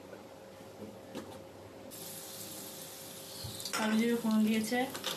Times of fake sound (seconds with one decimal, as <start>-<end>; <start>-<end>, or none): none